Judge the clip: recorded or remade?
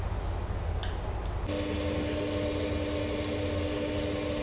recorded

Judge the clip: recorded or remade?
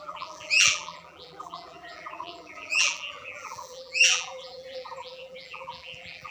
remade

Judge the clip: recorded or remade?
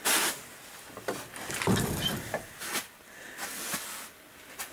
recorded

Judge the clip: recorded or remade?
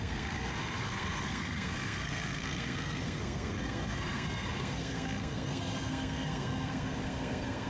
remade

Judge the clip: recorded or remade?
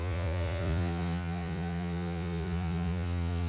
remade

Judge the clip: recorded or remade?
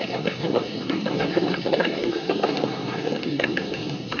remade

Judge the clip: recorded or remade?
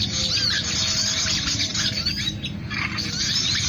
recorded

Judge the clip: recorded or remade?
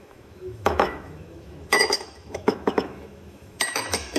remade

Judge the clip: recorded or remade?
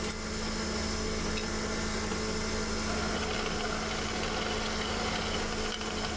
recorded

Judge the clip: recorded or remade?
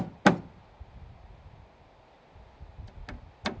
recorded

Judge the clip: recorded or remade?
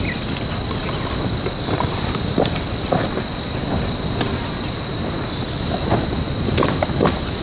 recorded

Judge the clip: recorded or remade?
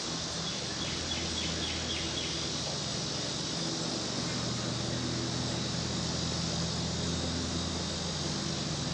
recorded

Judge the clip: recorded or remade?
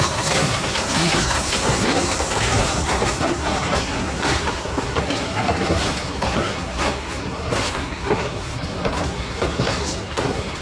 remade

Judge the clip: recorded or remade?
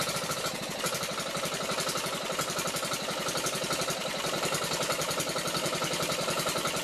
recorded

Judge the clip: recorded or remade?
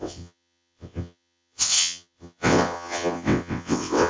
remade